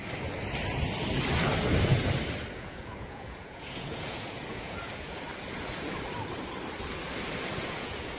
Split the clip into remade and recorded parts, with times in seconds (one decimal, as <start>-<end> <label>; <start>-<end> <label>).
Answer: 0.0-2.5 recorded; 2.5-5.3 remade; 5.3-7.5 recorded; 7.5-8.2 remade